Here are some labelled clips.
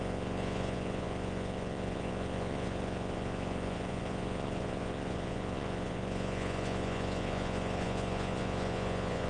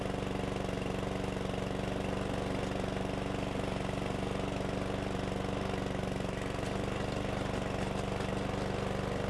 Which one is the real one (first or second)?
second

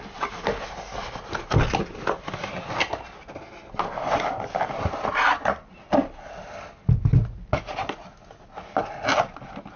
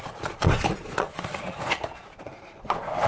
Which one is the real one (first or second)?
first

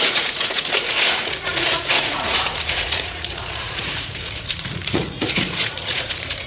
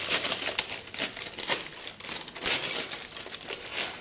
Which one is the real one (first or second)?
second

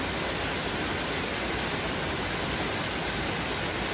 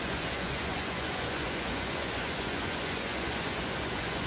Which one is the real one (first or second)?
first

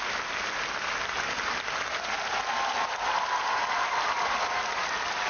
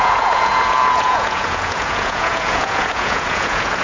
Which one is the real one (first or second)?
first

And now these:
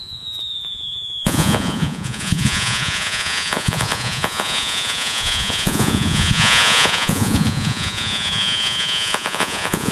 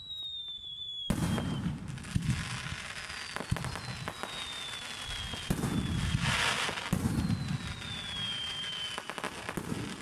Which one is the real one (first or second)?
second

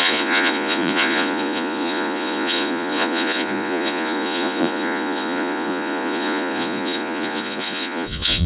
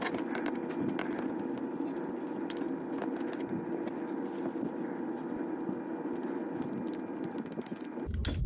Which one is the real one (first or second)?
second